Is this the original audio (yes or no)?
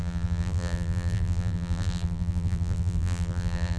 no